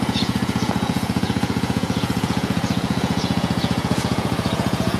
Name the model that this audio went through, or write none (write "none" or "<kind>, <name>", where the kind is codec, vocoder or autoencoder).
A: vocoder, Vocos